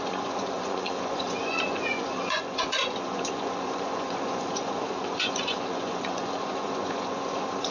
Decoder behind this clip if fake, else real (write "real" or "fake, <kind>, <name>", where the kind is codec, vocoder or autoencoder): fake, vocoder, Vocos